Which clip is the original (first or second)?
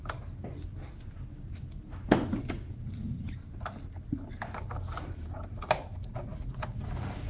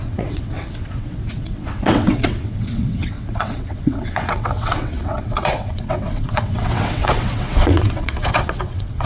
first